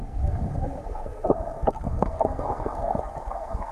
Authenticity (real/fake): fake